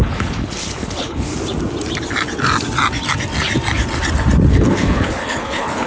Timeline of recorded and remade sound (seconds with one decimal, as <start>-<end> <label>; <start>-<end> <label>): 0.0-1.3 remade; 1.3-4.5 recorded; 4.5-5.9 remade